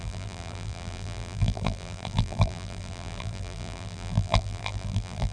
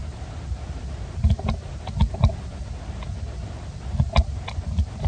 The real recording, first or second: second